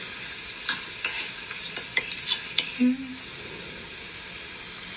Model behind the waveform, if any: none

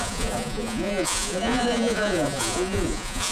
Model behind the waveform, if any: vocoder, Vocos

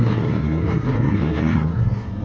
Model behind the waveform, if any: codec, SNAC